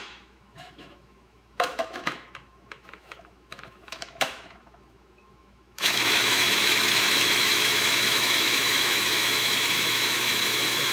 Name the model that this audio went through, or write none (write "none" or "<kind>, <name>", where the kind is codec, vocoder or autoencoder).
autoencoder, DAC-VAE